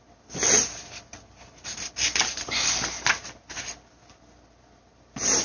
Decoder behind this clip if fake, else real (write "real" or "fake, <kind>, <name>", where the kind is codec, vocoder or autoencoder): real